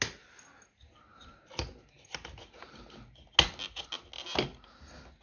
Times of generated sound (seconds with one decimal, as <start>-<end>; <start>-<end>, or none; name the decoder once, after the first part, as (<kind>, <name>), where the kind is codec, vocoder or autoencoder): none